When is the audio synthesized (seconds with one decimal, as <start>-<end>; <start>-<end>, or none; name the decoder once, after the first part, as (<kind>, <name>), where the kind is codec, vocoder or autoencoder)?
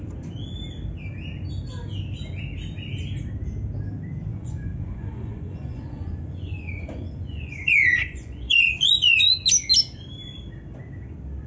4.3-9.3 (vocoder, Vocos)